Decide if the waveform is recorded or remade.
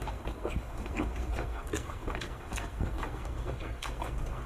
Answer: remade